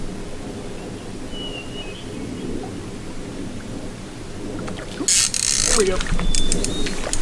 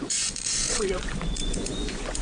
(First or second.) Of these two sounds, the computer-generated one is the second